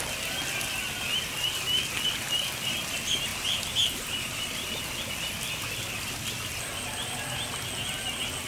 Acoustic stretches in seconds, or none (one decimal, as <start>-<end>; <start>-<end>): 0.0-3.3; 4.8-8.5

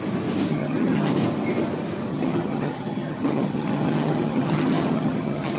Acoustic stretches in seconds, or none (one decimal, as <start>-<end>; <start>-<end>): 0.0-0.5; 1.1-2.1

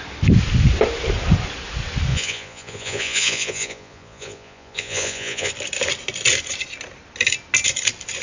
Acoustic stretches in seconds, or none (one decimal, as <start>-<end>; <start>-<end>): 0.0-2.1; 5.5-8.2

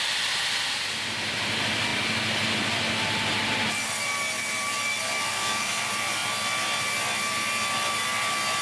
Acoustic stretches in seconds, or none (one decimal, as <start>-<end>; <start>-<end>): 0.0-5.3; 5.8-8.6

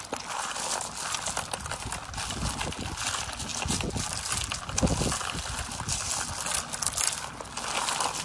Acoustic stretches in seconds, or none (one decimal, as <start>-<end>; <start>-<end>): 0.0-8.2

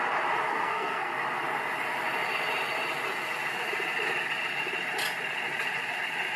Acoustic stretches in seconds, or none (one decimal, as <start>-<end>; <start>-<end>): 0.0-0.5; 1.2-6.4

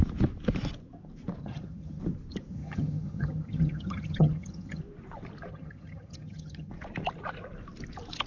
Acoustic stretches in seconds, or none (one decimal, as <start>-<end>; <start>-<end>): 0.0-1.4; 2.0-2.5; 4.8-5.5; 6.7-8.3